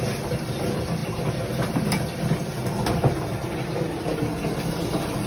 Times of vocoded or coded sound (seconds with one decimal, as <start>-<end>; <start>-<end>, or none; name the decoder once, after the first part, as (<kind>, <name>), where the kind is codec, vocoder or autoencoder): 0.0-5.3 (vocoder, BigVGAN v2)